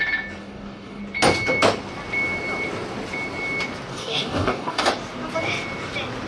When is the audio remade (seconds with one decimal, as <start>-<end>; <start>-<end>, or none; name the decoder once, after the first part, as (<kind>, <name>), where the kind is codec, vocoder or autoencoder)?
0.4-1.0 (codec, DAC); 3.9-4.9